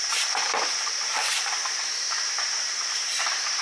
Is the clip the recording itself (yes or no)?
no